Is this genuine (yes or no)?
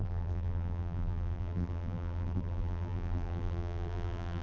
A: no